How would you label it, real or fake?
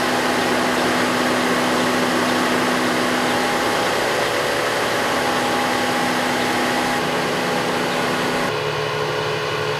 real